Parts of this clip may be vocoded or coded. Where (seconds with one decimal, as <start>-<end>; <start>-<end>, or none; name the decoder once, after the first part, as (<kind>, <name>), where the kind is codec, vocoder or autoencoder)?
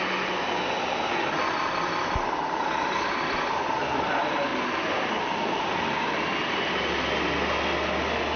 none